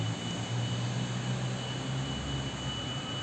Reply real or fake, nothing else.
real